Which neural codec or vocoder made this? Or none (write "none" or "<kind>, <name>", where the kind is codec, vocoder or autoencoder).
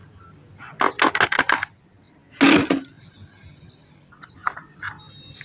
none